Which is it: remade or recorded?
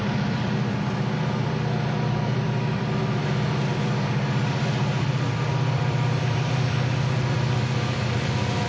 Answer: remade